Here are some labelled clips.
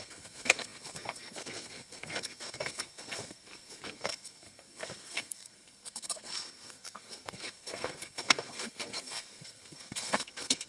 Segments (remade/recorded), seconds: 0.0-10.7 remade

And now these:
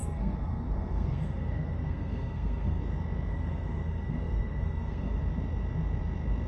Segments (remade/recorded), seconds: 0.0-2.8 remade; 2.8-3.3 recorded; 3.3-5.2 remade; 5.2-6.5 recorded

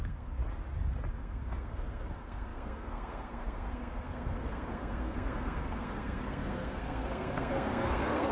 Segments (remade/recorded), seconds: 0.0-0.4 remade; 0.4-1.1 recorded; 1.1-8.3 remade

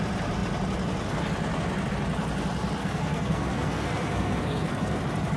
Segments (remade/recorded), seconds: 0.0-2.8 recorded; 2.8-5.0 remade; 5.0-5.4 recorded

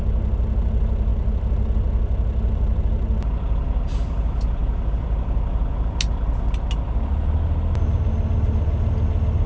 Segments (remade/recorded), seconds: 0.0-9.5 recorded

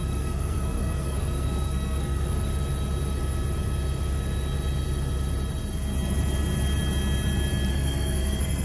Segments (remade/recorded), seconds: 0.0-2.5 remade; 2.5-7.7 recorded; 7.7-8.6 remade

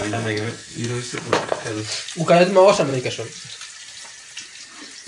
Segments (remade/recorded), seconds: 0.0-1.8 remade; 1.8-5.1 recorded

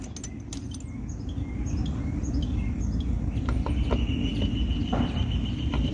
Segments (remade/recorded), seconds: 0.0-5.9 recorded